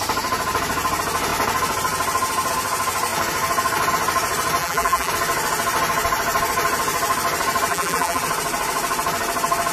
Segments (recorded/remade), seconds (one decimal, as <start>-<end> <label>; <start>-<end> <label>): 0.0-4.6 recorded; 4.6-5.1 remade; 5.1-7.7 recorded; 7.7-8.2 remade; 8.2-9.7 recorded